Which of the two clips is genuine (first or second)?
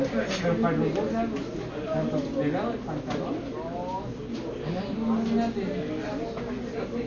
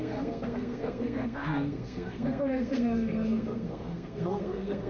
first